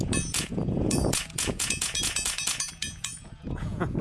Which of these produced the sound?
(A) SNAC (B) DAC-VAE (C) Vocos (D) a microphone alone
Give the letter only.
C